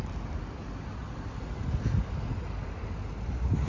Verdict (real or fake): real